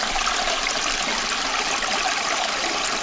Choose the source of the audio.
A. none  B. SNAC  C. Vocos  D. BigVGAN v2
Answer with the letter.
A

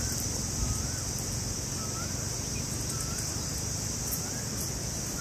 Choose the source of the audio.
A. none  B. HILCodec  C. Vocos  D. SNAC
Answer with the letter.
A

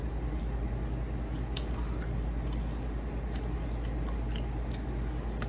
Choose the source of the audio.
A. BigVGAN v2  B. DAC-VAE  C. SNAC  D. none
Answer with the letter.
D